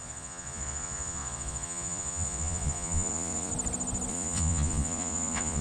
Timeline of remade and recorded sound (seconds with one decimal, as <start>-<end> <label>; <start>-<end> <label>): 0.0-3.5 remade; 3.5-4.1 recorded; 4.1-5.6 remade